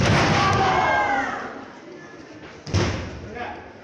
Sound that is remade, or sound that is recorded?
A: recorded